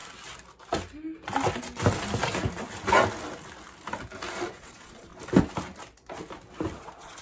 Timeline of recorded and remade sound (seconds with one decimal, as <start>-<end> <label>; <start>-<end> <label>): 0.0-4.3 recorded; 4.3-5.1 remade; 5.1-6.8 recorded; 6.8-7.2 remade